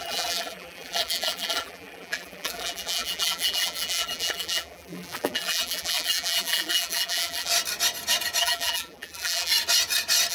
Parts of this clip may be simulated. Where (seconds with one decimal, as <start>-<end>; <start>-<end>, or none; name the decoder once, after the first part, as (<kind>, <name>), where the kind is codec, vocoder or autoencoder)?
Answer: 0.0-7.5 (vocoder, BigVGAN v2); 8.4-9.5